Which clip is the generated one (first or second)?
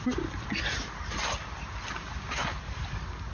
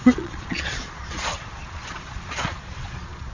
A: second